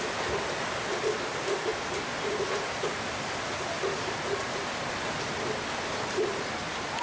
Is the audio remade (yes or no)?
no